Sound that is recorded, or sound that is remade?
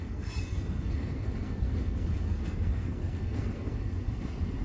remade